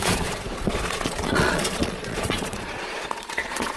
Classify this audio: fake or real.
fake